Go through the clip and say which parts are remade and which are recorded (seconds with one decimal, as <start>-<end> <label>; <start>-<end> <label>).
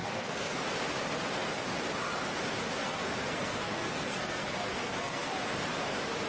0.0-0.6 remade; 0.6-2.8 recorded; 2.8-5.3 remade; 5.3-6.3 recorded